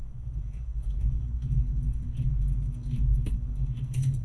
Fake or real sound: fake